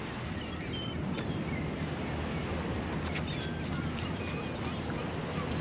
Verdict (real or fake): real